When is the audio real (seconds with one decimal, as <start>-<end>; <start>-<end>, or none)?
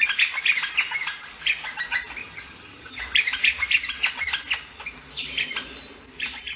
0.0-2.2; 3.0-6.6